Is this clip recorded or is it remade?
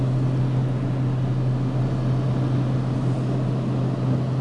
recorded